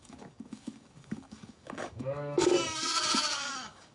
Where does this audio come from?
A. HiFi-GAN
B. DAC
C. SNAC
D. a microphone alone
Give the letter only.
B